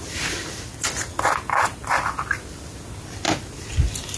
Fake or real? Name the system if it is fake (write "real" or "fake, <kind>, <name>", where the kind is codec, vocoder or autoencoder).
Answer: real